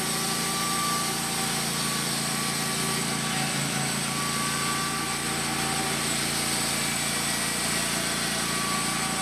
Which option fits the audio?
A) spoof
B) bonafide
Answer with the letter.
B